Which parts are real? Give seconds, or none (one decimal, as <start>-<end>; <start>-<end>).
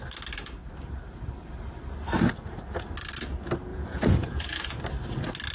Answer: 0.0-3.7; 4.8-5.5